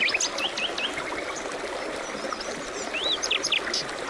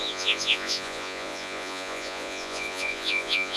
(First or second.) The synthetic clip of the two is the second